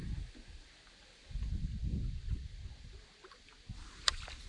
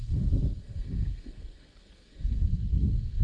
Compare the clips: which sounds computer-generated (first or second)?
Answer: second